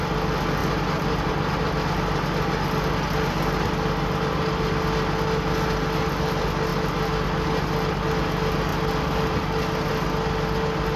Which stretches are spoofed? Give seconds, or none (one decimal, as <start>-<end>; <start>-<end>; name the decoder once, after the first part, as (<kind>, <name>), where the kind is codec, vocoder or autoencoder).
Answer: 0.6-1.3 (vocoder, BigVGAN v2)